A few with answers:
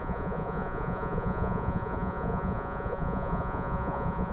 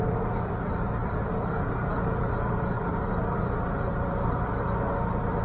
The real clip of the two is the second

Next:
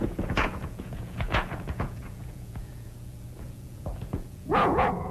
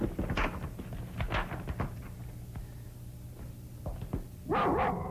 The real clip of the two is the second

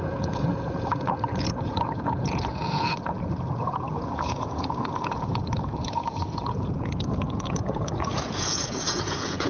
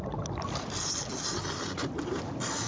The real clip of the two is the second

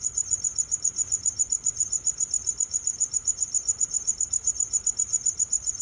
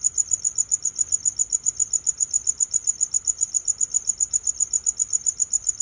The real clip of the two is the second